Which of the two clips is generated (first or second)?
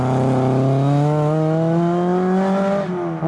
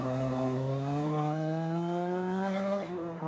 second